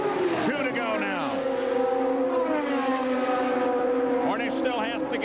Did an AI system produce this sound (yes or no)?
no